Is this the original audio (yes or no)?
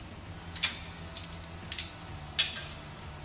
yes